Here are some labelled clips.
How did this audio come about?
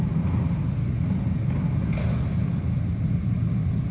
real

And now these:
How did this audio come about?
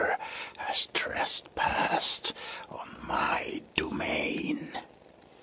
fake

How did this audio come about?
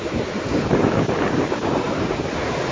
real